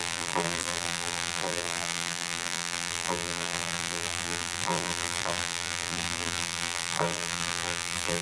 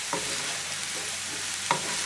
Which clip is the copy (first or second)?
first